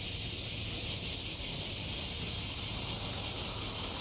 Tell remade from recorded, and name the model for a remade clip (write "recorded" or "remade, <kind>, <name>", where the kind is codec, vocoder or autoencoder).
recorded